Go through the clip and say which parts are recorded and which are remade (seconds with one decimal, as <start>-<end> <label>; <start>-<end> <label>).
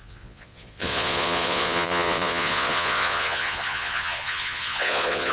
0.0-5.3 remade